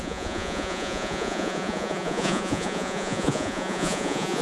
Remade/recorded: remade